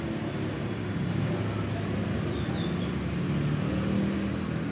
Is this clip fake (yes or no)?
no